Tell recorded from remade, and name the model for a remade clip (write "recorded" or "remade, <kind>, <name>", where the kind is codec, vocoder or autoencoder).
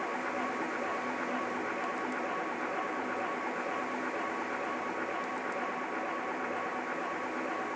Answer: recorded